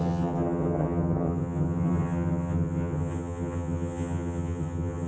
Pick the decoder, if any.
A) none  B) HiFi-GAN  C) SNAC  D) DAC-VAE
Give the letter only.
B